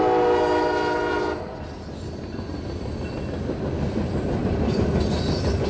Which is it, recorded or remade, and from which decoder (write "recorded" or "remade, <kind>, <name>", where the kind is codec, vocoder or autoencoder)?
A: recorded